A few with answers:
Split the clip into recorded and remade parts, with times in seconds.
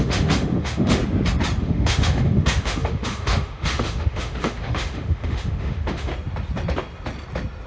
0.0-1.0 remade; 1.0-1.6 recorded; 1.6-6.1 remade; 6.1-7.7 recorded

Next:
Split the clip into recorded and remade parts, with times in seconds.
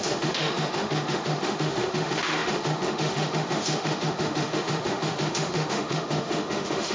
0.0-6.9 remade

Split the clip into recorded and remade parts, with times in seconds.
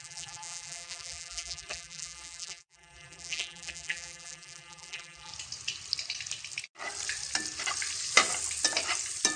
0.0-5.3 remade; 5.3-9.4 recorded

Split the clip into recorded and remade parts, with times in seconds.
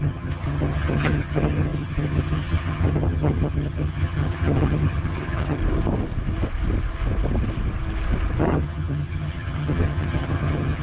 0.0-5.6 remade; 5.6-8.4 recorded; 8.4-10.8 remade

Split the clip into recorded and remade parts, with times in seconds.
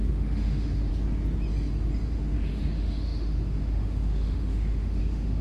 0.0-0.9 remade; 0.9-2.1 recorded; 2.1-5.4 remade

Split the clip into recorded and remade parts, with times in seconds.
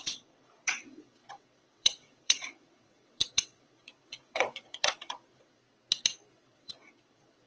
0.0-5.6 remade; 5.6-6.3 recorded; 6.3-7.5 remade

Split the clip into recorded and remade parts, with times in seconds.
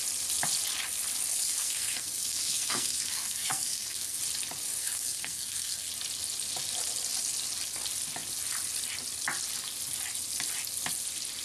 0.0-1.3 recorded; 1.3-4.2 remade; 4.2-4.8 recorded; 4.8-5.9 remade; 5.9-11.4 recorded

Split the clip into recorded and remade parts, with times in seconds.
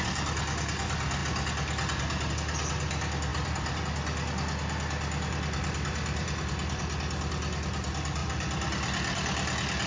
0.0-3.3 recorded; 3.3-3.8 remade; 3.8-6.2 recorded; 6.2-6.8 remade; 6.8-8.2 recorded; 8.2-9.9 remade